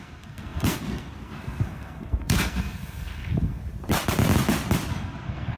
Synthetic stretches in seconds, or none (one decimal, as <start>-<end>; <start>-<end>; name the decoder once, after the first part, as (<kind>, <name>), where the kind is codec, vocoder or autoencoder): 0.0-3.6 (codec, SNAC); 4.9-5.6